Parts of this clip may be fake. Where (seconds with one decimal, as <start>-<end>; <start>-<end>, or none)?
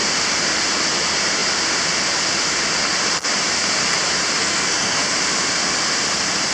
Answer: 4.4-5.1